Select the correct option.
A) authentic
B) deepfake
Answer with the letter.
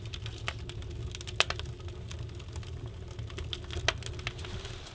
A